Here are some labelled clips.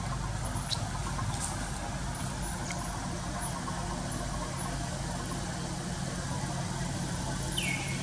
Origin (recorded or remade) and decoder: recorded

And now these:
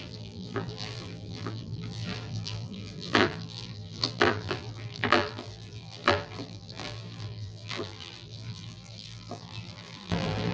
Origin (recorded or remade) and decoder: remade, vocoder, BigVGAN v2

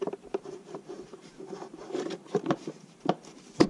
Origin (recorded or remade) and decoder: remade, vocoder, BigVGAN v2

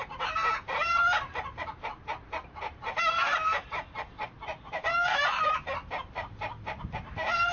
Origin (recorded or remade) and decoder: remade, vocoder, BigVGAN v2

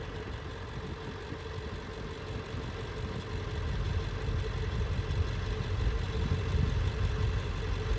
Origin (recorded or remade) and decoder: recorded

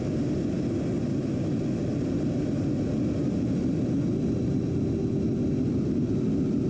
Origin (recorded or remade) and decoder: recorded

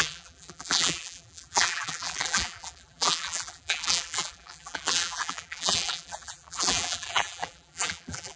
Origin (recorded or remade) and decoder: remade, vocoder, BigVGAN v2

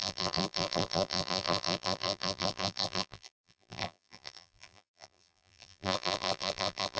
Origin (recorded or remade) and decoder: remade, vocoder, BigVGAN v2